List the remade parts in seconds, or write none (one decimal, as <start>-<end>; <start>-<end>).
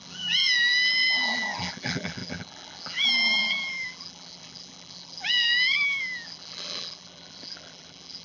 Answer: 0.0-8.2